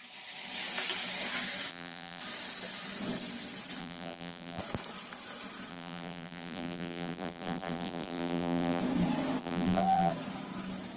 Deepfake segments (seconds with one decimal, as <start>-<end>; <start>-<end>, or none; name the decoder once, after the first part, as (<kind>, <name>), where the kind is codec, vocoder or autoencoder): 1.7-2.2 (vocoder, BigVGAN v2); 3.8-4.6; 5.7-8.8; 9.4-10.1